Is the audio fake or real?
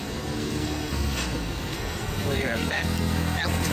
fake